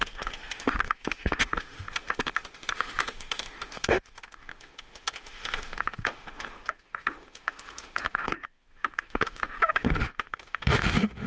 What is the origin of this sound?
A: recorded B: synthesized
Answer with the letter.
B